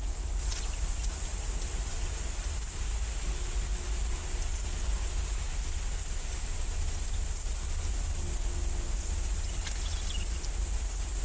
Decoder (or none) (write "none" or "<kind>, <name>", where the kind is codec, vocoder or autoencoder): none